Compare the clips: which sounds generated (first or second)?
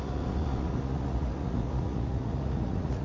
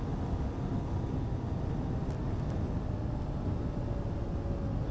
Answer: first